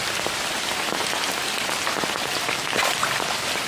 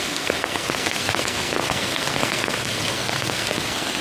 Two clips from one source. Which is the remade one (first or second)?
second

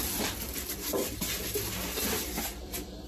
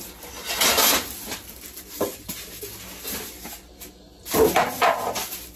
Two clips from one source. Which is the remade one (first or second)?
first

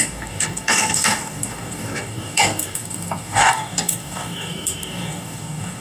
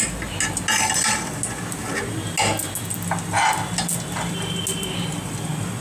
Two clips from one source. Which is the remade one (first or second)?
first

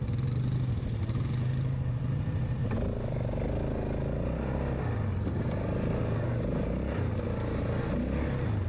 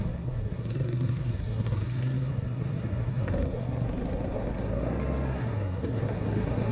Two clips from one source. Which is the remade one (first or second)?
second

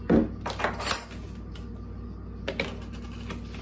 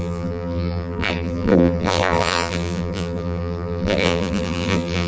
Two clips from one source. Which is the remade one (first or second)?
second